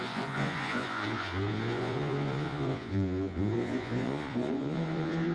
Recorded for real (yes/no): no